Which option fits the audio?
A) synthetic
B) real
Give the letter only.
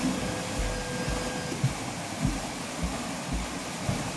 B